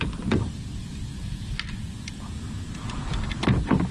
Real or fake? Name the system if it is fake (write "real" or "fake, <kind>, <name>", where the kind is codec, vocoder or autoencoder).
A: real